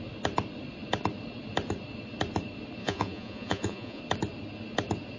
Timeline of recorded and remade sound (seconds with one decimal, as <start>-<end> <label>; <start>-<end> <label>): 0.0-2.8 recorded; 2.8-4.0 remade; 4.0-5.2 recorded